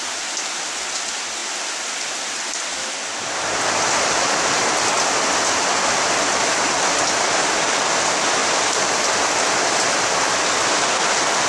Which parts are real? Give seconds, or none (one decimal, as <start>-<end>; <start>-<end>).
0.0-8.4; 9.0-11.5